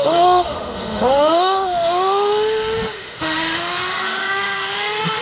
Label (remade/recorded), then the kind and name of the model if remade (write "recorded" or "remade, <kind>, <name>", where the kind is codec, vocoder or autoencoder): remade, autoencoder, DAC-VAE